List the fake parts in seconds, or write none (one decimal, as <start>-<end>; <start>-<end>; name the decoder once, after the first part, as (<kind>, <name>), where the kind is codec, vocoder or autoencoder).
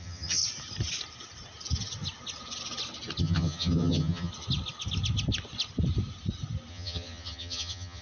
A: 0.0-0.4 (vocoder, HiFi-GAN); 3.2-4.3; 6.7-8.0